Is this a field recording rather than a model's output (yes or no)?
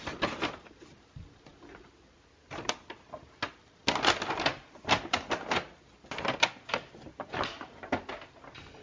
yes